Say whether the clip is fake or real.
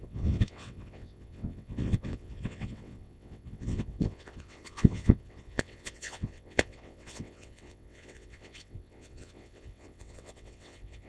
fake